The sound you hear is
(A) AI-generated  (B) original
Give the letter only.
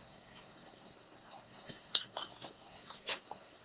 A